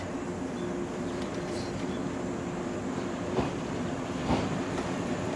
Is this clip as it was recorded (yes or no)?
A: no